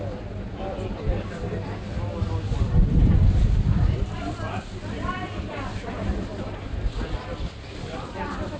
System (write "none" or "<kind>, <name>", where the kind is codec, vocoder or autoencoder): vocoder, BigVGAN v2